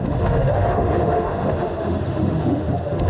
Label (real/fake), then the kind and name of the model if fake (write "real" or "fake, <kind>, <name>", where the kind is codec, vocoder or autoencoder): fake, autoencoder, DAC-VAE